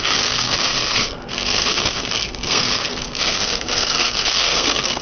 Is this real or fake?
fake